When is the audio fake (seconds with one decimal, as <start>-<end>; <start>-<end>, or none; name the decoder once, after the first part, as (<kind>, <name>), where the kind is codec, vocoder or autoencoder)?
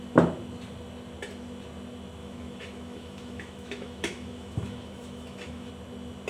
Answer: 2.2-5.7 (autoencoder, DAC-VAE)